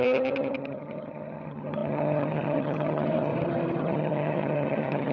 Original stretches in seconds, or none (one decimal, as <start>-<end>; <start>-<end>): 3.3-3.8

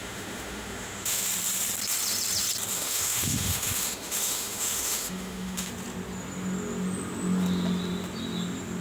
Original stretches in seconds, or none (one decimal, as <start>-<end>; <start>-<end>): 1.3-2.7; 5.7-8.8

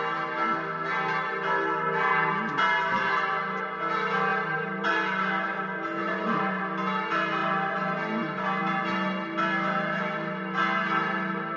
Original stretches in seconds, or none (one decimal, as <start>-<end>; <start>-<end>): 0.0-4.3; 4.9-6.0; 6.6-11.6

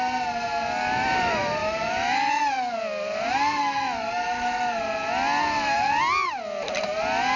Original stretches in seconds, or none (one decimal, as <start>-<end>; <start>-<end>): 0.0-1.6; 2.4-3.6; 4.8-7.4